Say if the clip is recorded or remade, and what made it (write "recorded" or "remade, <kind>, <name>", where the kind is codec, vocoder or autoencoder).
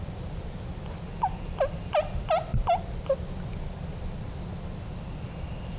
recorded